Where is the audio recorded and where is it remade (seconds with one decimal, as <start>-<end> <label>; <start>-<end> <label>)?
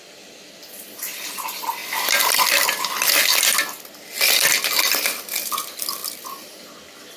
0.0-1.8 remade; 1.8-4.2 recorded; 4.2-7.2 remade